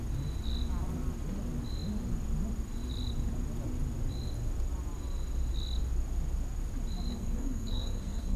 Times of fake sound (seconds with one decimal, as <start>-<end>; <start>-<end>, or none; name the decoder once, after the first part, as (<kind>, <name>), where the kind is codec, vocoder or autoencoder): 7.1-8.4 (codec, SNAC)